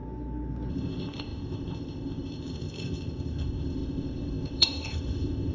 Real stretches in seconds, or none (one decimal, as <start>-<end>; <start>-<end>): 0.0-0.7